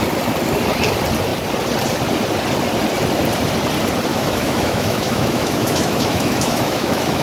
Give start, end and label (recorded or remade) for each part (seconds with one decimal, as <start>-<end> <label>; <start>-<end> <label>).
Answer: 0.0-4.1 recorded; 4.1-7.2 remade